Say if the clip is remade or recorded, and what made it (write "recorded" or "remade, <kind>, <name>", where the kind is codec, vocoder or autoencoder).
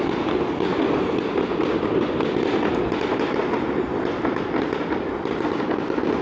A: recorded